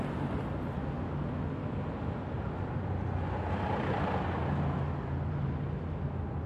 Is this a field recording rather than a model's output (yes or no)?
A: yes